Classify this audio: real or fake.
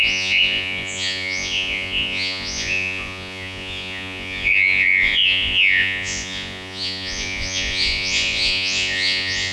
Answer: fake